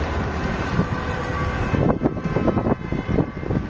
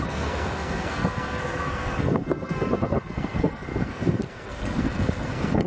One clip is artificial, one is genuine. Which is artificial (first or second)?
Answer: second